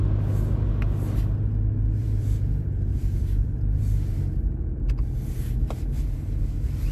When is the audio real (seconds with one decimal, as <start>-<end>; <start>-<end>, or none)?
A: 0.0-2.0; 3.8-6.9